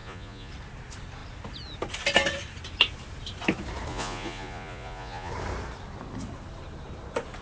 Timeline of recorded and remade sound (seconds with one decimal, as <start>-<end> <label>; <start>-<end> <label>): 0.0-0.5 remade; 0.5-3.9 recorded; 3.9-5.3 remade; 5.3-7.4 recorded